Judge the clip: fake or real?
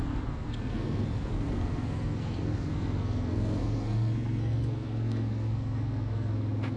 fake